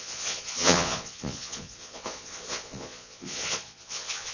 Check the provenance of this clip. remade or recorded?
remade